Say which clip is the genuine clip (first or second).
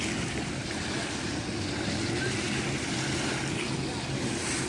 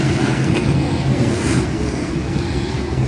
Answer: first